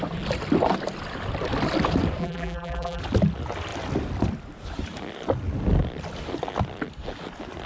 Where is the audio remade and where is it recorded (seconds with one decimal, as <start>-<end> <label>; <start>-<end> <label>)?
0.0-2.2 recorded; 2.2-3.0 remade; 3.0-7.7 recorded